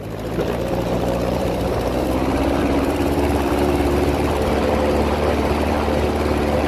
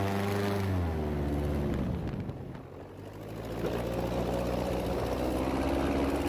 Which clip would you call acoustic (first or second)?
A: second